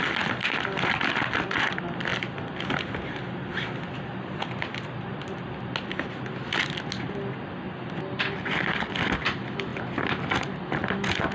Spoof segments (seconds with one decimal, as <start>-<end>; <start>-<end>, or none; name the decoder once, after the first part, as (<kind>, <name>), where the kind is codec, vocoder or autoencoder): none